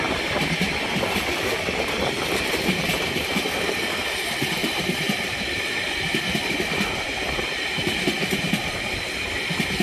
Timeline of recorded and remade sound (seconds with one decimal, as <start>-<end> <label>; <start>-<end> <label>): 0.0-4.6 recorded; 4.6-5.6 remade; 5.6-9.8 recorded